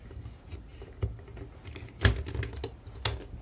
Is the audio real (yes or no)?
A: yes